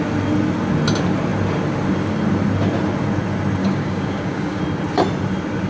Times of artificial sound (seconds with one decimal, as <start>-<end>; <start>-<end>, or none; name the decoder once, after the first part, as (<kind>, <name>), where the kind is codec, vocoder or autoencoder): 3.6-4.6 (codec, DAC)